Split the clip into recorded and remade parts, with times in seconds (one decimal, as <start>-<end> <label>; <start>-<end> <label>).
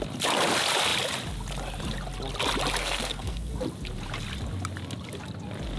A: 0.0-2.8 recorded; 2.8-3.5 remade; 3.5-5.8 recorded